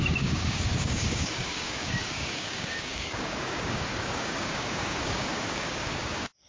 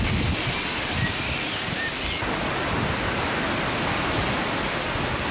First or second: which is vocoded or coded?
first